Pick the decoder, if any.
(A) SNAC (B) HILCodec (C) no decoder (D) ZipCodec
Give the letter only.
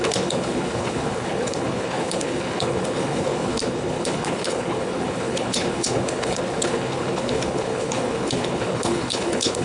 B